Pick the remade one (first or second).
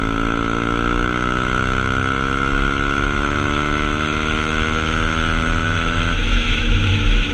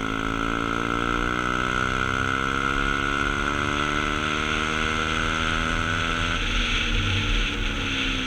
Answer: first